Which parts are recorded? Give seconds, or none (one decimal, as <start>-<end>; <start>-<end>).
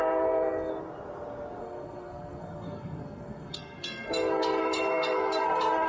0.7-1.6